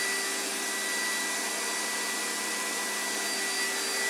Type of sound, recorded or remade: recorded